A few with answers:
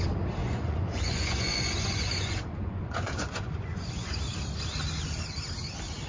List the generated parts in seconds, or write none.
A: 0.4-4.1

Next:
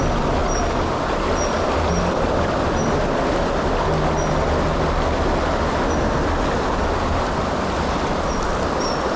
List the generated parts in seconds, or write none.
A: none